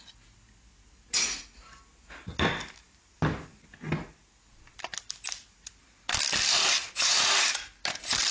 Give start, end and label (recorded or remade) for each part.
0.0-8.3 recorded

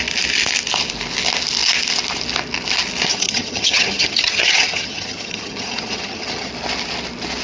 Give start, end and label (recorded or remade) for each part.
0.0-3.1 recorded; 3.1-6.5 remade; 6.5-7.4 recorded

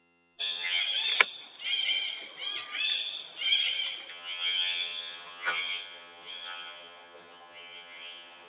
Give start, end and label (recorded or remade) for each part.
0.0-0.8 remade; 0.8-4.1 recorded; 4.1-8.5 remade

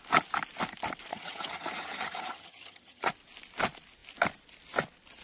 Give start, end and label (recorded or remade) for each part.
0.0-1.1 recorded; 1.1-3.1 remade; 3.1-5.2 recorded